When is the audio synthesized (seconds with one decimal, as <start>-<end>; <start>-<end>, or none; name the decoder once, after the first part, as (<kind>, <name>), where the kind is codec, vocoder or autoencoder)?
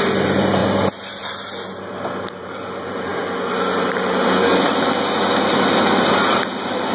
0.0-0.6 (vocoder, BigVGAN v2); 2.3-3.1; 6.3-6.9